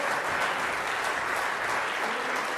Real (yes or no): yes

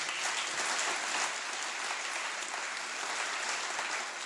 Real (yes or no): yes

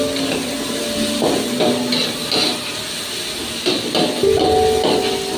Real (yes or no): yes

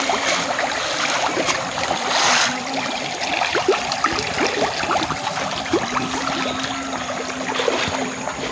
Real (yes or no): yes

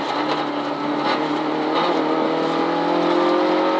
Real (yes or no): yes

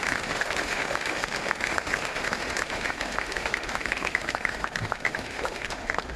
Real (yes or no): no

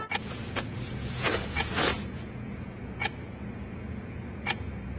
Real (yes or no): no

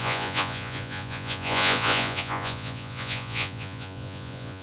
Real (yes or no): no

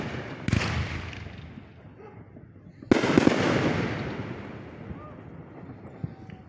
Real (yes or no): yes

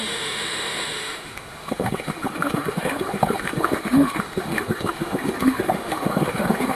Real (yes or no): no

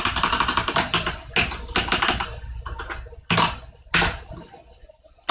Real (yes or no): yes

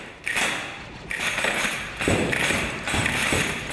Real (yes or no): no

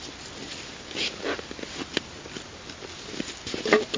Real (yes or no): yes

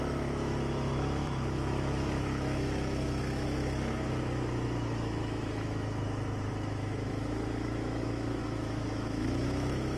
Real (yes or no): no